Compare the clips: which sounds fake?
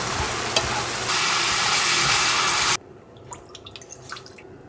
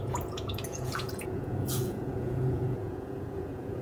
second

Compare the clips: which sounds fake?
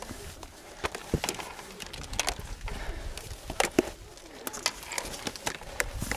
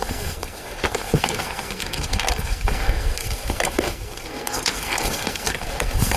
second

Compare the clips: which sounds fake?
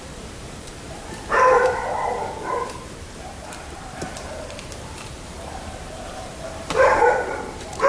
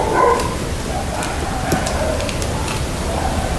first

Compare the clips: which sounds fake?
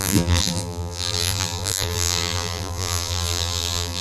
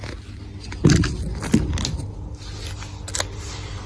first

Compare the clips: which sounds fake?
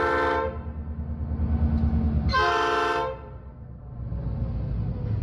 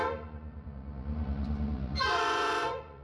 second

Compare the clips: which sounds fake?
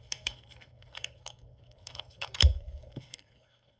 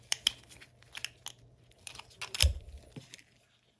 first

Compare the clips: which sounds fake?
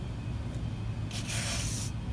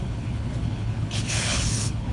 second